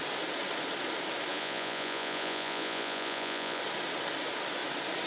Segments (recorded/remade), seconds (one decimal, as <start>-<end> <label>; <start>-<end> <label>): 0.0-1.3 recorded; 1.3-3.6 remade; 3.6-5.1 recorded